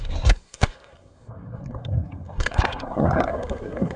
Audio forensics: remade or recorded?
remade